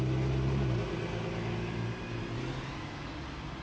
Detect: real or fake real